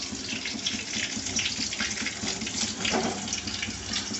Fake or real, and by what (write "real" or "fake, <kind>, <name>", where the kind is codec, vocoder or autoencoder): real